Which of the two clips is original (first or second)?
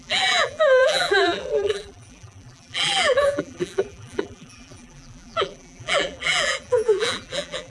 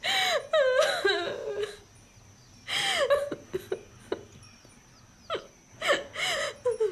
second